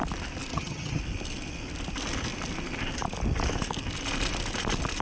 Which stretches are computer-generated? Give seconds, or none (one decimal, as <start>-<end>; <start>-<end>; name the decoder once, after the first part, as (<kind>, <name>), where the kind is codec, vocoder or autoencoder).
0.5-1.0 (vocoder, HiFi-GAN)